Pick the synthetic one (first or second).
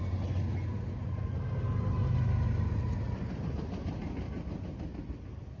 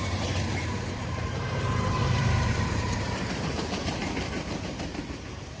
second